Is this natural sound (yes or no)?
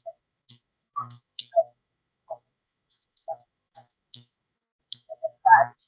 no